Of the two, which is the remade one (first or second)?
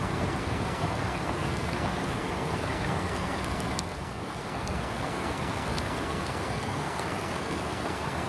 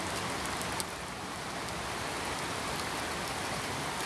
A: first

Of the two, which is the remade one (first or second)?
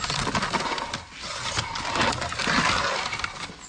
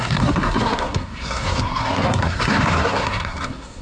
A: second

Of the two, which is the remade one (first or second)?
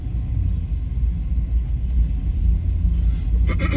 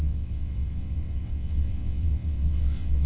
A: second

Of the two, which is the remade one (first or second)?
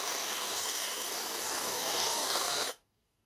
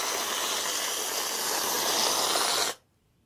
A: first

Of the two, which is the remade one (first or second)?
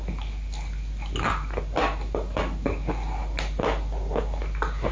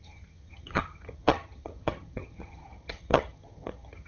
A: second